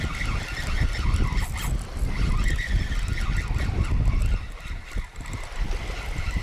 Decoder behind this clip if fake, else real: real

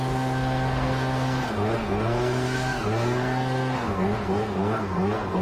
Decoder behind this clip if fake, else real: fake, codec, SNAC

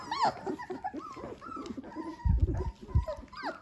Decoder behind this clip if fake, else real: real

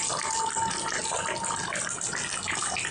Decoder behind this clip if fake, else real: real